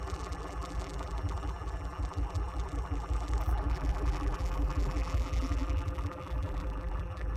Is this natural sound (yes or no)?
no